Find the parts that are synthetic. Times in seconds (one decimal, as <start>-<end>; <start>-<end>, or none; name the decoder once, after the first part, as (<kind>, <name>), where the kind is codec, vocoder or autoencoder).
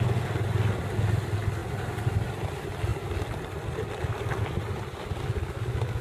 none